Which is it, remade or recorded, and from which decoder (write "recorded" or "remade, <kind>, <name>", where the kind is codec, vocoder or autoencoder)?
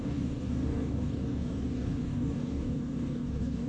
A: remade, codec, DAC